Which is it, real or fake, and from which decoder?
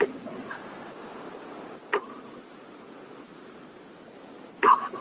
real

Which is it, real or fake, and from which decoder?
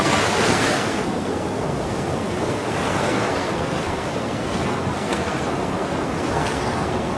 fake, codec, SNAC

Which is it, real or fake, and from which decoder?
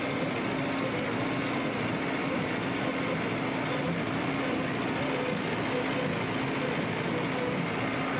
real